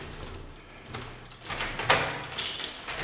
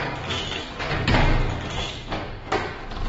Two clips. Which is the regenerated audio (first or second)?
second